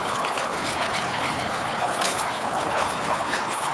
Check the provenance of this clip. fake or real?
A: fake